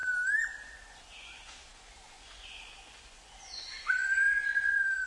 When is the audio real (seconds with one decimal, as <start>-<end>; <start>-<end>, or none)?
0.0-0.6